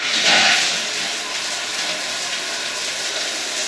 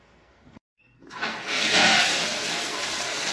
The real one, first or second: first